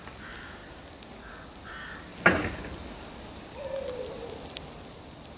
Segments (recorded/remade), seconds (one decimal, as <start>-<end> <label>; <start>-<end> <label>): 0.0-5.4 recorded